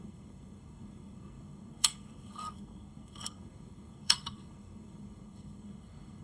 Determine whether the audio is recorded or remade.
remade